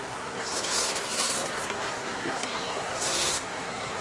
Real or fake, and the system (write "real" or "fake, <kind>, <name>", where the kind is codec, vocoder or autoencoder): fake, codec, SNAC